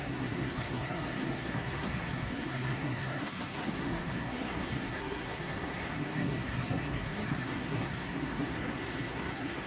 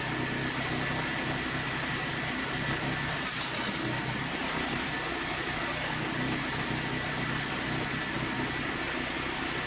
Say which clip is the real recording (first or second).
second